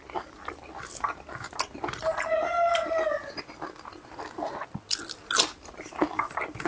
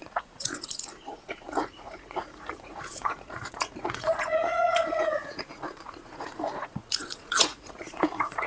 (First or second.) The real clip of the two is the first